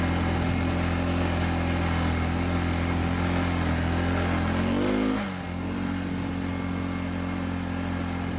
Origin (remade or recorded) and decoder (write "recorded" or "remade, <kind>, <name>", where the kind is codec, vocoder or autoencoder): recorded